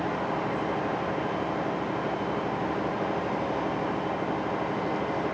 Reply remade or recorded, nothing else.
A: recorded